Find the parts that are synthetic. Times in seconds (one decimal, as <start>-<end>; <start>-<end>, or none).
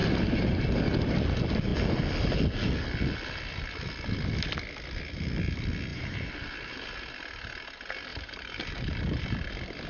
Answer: 0.0-1.2; 5.9-7.1; 8.1-9.0